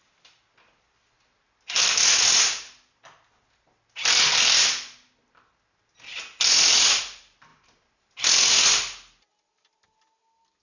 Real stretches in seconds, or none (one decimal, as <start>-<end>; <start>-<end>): 0.0-10.6